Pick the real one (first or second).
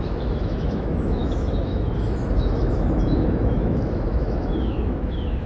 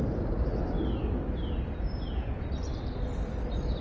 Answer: second